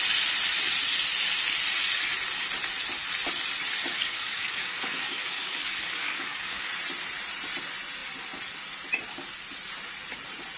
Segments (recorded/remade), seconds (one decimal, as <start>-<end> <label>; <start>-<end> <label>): 0.0-3.9 recorded; 3.9-6.7 remade; 6.7-10.6 recorded